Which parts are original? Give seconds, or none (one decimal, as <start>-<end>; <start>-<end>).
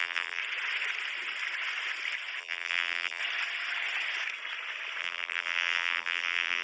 0.4-2.4; 3.2-5.0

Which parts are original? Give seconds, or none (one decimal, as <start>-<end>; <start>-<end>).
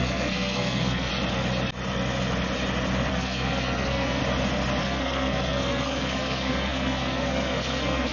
1.1-3.1; 4.2-4.8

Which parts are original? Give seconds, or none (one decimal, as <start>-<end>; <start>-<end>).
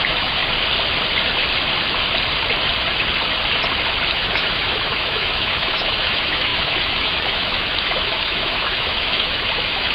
0.4-4.1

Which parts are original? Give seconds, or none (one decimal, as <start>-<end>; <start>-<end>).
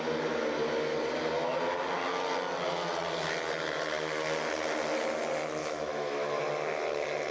0.0-5.6; 6.4-7.3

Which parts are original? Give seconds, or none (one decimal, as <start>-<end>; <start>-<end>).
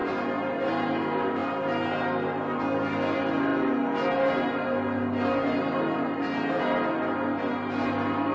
0.0-8.3